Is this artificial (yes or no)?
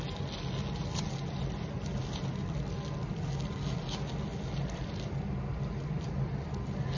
no